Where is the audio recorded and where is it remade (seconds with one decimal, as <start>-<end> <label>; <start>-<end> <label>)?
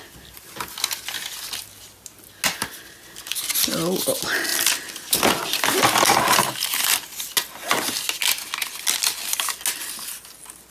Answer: 0.0-10.7 recorded